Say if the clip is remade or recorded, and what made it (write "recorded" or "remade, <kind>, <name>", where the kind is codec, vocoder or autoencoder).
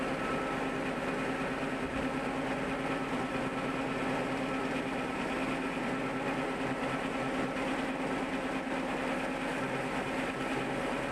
recorded